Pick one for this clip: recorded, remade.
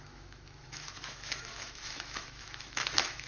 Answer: remade